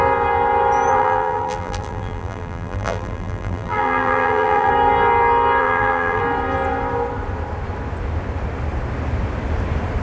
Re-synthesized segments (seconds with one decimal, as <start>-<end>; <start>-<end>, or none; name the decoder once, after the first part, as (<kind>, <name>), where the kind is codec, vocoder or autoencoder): 0.9-4.7 (vocoder, BigVGAN v2); 5.6-6.2